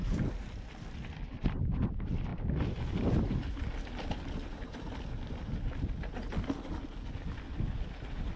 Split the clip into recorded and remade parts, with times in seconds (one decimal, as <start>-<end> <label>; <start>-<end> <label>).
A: 0.0-8.4 recorded